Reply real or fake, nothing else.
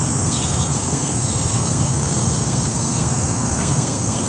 fake